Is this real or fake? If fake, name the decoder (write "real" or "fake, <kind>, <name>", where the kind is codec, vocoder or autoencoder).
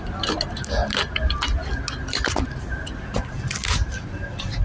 real